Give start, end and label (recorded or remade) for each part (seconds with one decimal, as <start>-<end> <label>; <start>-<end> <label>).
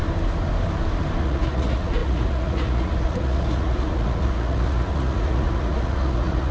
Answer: 0.0-1.2 recorded; 1.2-6.5 remade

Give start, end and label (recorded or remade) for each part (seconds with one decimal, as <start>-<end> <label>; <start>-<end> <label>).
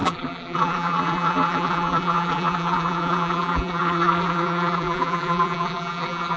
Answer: 0.0-6.4 remade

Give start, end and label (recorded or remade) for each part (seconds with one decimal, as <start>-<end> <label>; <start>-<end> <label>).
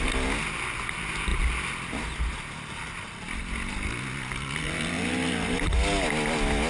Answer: 0.0-6.7 recorded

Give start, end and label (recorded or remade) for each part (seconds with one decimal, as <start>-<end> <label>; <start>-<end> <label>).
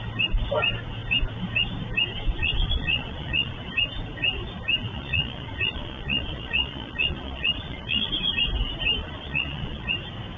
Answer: 0.0-2.4 recorded; 2.4-3.6 remade; 3.6-4.8 recorded; 4.8-8.1 remade; 8.1-9.0 recorded; 9.0-9.9 remade; 9.9-10.4 recorded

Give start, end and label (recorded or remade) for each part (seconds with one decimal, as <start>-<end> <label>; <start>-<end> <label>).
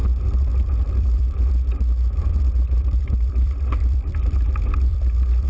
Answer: 0.0-1.5 remade; 1.5-2.2 recorded; 2.2-5.5 remade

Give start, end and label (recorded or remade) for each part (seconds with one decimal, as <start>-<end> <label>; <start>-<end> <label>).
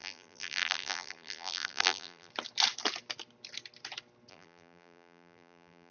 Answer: 0.0-2.3 remade; 2.3-4.3 recorded; 4.3-5.9 remade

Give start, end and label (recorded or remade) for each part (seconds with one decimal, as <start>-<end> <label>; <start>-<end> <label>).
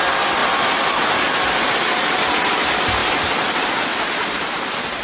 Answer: 0.0-3.0 recorded; 3.0-3.5 remade; 3.5-3.9 recorded; 3.9-5.0 remade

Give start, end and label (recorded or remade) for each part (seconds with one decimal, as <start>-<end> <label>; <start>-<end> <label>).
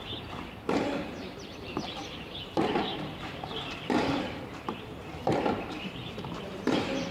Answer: 0.0-7.1 remade